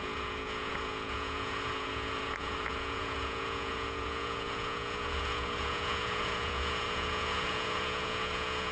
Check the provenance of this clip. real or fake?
fake